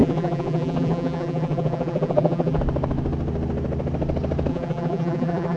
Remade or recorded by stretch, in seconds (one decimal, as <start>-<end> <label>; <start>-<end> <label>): 0.0-2.6 remade; 2.6-4.5 recorded; 4.5-5.6 remade